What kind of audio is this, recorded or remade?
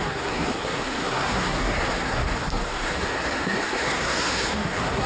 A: remade